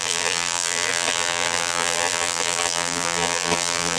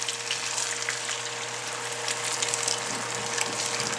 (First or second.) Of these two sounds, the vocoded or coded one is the first